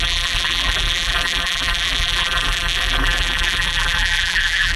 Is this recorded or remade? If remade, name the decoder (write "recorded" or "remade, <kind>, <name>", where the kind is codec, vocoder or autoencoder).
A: remade, vocoder, BigVGAN v2